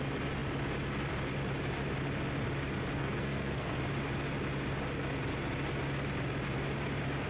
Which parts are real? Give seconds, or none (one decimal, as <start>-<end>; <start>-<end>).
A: 0.0-3.0; 3.8-7.3